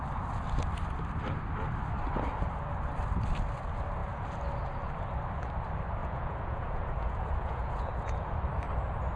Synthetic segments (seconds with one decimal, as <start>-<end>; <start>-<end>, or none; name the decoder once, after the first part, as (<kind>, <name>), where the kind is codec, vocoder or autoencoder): 6.0-8.4 (vocoder, Vocos)